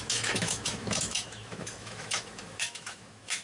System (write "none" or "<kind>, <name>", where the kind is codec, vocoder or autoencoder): autoencoder, DAC-VAE